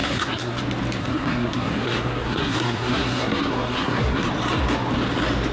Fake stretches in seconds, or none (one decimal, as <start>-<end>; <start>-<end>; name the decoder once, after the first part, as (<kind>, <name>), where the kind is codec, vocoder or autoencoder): 0.0-0.6 (codec, SNAC); 1.0-4.3

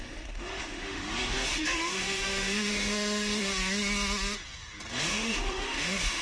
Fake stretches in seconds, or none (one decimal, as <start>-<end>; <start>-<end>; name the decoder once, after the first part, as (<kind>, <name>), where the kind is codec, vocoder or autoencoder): 0.0-3.5 (autoencoder, DAC-VAE); 4.9-6.2

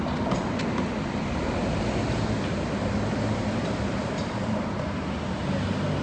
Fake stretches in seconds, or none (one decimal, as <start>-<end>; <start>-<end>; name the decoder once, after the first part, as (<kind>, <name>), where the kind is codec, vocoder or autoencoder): none

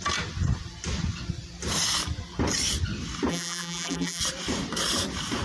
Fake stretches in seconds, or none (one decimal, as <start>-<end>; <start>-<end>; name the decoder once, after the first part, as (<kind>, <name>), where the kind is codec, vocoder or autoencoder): 3.3-4.2 (vocoder, BigVGAN v2)

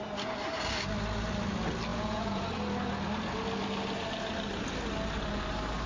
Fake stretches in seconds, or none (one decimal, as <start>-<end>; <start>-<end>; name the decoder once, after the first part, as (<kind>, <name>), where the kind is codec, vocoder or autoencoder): 1.9-2.4 (vocoder, Vocos)

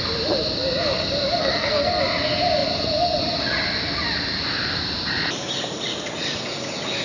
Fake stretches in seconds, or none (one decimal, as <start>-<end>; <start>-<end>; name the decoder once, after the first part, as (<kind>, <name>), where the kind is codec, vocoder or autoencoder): 1.4-2.0 (codec, SNAC)

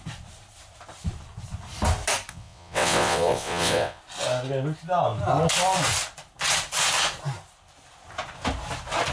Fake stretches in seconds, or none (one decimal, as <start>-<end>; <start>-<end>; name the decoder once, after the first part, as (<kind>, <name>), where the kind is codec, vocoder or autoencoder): 2.3-4.0 (vocoder, WaveNeXt)

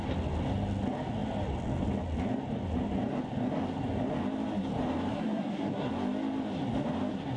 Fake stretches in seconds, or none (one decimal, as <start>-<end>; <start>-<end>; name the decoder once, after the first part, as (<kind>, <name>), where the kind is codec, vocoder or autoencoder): 5.1-5.9 (codec, SNAC)